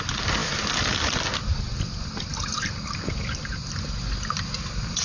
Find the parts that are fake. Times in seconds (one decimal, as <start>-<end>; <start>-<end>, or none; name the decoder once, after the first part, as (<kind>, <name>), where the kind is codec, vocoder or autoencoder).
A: none